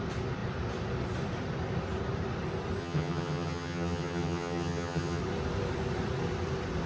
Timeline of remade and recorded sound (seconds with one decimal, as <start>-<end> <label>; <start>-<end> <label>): 0.0-2.8 recorded; 2.8-5.2 remade; 5.2-6.9 recorded